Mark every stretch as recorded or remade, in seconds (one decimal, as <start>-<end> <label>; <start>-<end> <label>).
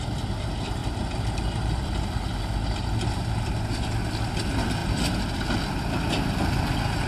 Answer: 0.0-0.8 recorded; 0.8-2.0 remade; 2.0-4.8 recorded; 4.8-5.3 remade; 5.3-7.1 recorded